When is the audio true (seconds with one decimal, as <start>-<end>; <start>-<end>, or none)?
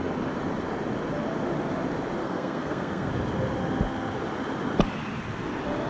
0.0-2.2; 3.1-5.9